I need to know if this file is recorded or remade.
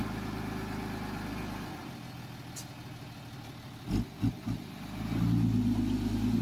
recorded